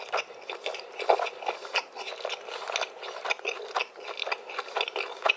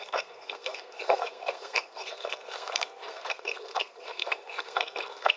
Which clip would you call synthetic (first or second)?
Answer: second